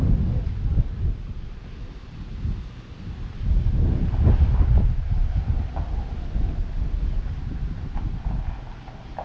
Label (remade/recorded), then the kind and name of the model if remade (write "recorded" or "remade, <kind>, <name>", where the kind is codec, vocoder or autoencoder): recorded